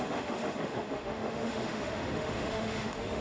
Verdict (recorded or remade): remade